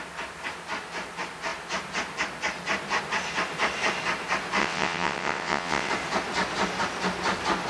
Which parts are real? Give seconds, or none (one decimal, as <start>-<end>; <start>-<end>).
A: 0.0-4.6; 5.9-7.7